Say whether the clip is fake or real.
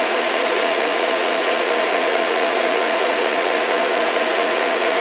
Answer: fake